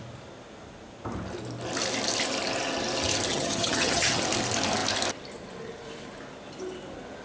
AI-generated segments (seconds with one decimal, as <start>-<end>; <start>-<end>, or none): 3.3-4.2